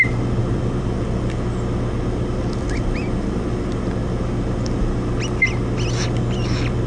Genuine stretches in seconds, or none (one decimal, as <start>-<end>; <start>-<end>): 0.0-0.4; 1.0-6.9